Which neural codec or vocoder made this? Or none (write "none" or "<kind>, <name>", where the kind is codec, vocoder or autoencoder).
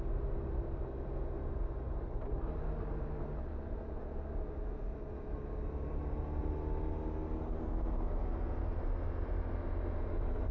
none